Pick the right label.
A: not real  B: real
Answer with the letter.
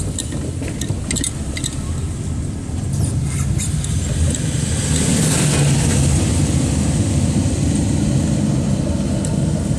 B